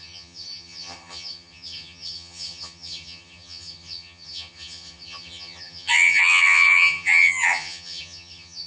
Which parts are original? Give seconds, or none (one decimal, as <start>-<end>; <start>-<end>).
none